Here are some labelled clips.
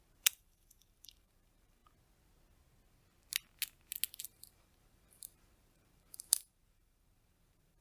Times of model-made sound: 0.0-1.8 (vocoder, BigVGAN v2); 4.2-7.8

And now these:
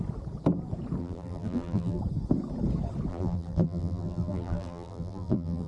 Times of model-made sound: 1.0-2.0 (vocoder, BigVGAN v2); 3.1-5.7

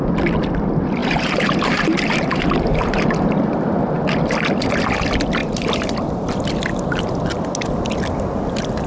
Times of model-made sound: 1.0-3.4 (vocoder, BigVGAN v2); 5.4-6.3

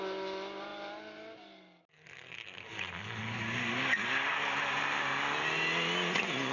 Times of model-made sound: none

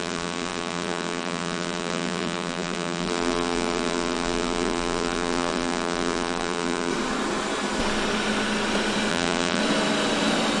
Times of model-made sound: 0.0-6.9 (vocoder, BigVGAN v2); 9.1-9.6